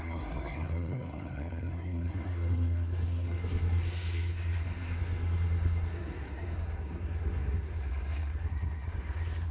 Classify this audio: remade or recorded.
remade